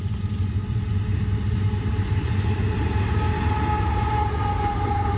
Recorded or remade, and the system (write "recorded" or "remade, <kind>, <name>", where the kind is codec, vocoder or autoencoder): recorded